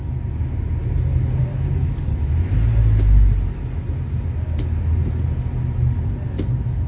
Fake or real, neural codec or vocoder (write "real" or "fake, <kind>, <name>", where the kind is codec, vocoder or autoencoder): real